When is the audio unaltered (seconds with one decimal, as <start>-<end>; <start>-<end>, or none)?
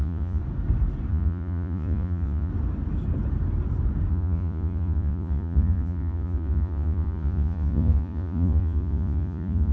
0.4-1.1; 2.5-4.1